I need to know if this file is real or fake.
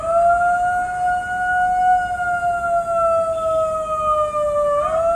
real